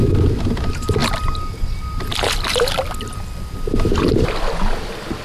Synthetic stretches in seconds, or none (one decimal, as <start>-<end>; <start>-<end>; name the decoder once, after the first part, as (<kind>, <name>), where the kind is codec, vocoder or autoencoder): none

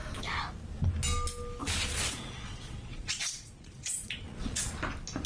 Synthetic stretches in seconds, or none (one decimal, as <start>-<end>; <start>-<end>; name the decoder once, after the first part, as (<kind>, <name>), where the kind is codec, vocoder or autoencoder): 1.6-4.8 (vocoder, Vocos)

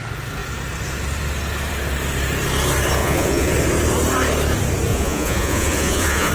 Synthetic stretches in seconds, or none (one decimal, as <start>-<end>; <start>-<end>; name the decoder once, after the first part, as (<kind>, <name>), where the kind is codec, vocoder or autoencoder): 3.0-3.5 (vocoder, Vocos); 4.9-6.3

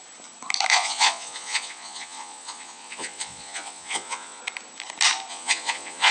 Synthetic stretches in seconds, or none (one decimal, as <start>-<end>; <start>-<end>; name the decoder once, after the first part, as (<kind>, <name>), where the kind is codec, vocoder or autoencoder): 0.7-4.4 (vocoder, Vocos); 5.3-6.1

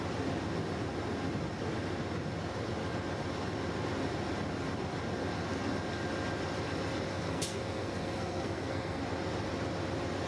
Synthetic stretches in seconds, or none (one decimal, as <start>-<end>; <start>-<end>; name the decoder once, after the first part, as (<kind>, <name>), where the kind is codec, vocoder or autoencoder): 7.1-9.0 (codec, SNAC)

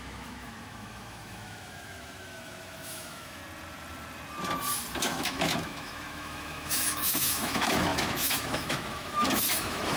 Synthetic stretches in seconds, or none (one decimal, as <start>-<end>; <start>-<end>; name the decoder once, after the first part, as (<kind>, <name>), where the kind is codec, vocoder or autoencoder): 0.0-3.4 (autoencoder, DAC-VAE); 5.0-10.0

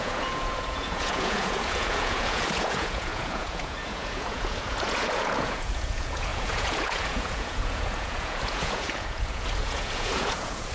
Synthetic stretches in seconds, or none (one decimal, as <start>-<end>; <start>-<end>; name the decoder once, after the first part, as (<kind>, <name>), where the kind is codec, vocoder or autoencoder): 0.0-10.7 (vocoder, Vocos)

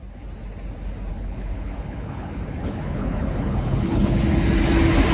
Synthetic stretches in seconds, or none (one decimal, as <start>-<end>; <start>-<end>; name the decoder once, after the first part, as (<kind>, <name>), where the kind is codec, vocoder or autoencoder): 1.1-4.2 (codec, HILCodec)